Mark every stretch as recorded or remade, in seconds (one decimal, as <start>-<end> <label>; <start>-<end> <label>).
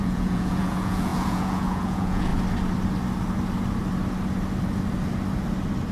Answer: 0.0-2.3 remade; 2.3-5.9 recorded